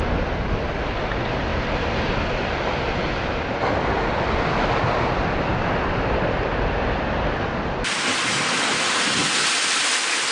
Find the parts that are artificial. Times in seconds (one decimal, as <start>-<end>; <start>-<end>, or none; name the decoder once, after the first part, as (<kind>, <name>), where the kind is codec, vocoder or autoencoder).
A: none